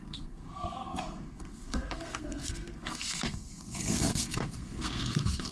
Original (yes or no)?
no